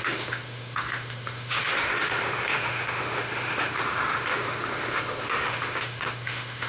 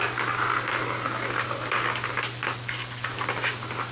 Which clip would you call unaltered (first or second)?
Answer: second